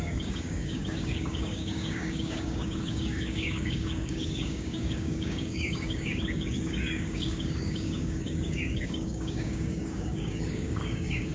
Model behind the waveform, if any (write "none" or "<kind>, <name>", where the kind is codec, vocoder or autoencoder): codec, DAC